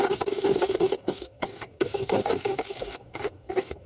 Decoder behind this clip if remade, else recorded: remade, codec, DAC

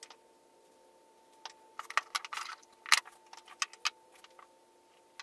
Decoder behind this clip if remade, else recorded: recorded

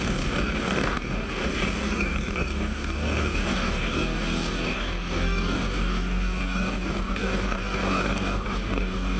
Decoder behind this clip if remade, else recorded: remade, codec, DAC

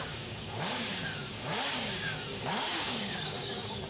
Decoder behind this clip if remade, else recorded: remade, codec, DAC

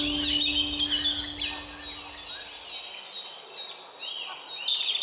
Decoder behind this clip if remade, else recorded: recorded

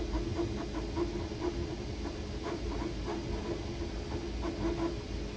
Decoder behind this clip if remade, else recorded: recorded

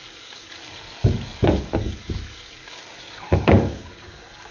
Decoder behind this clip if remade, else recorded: remade, codec, DAC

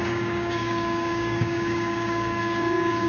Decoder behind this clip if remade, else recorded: remade, codec, DAC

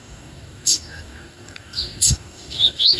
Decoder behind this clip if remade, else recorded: remade, codec, DAC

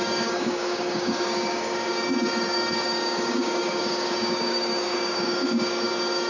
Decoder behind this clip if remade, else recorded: remade, codec, DAC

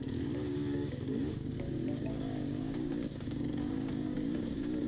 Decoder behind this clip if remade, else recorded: remade, codec, DAC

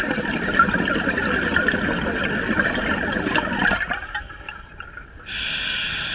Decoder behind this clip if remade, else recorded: recorded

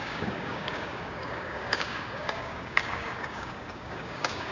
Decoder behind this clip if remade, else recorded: remade, codec, DAC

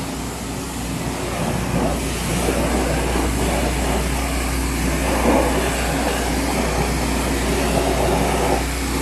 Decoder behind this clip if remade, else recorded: recorded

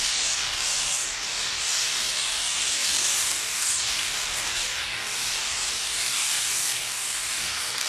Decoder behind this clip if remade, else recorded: remade, codec, DAC